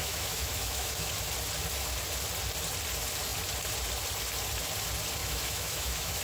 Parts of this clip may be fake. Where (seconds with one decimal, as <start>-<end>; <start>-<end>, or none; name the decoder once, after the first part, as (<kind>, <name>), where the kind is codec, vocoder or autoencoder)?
0.0-1.1 (autoencoder, DAC-VAE); 5.2-6.2